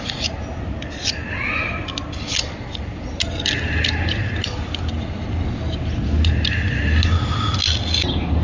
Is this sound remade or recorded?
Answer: recorded